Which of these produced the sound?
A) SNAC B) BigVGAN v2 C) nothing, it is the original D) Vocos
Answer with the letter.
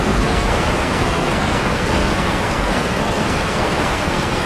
A